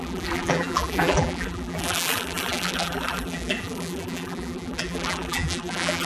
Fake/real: fake